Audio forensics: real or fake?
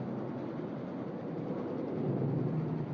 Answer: real